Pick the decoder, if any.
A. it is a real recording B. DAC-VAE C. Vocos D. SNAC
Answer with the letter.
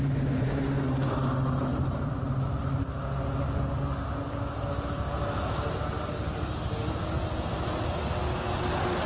A